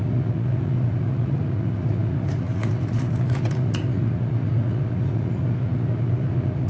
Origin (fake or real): fake